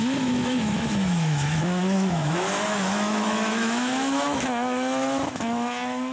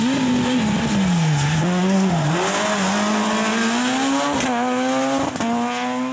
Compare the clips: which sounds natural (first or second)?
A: second